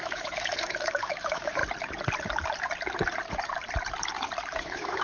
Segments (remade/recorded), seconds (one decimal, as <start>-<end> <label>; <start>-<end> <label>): 0.0-1.6 remade; 1.6-4.6 recorded; 4.6-5.0 remade